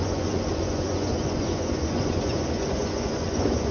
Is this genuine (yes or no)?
no